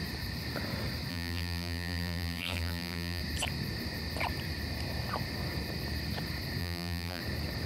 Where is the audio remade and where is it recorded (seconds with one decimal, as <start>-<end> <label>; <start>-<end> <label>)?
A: 0.0-1.1 recorded; 1.1-3.2 remade; 3.2-6.6 recorded; 6.6-7.2 remade; 7.2-7.7 recorded